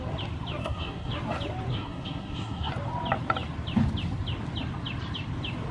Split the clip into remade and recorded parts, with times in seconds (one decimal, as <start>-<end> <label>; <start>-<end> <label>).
0.0-0.6 recorded; 0.6-1.1 remade; 1.1-1.7 recorded; 1.7-2.7 remade; 2.7-5.7 recorded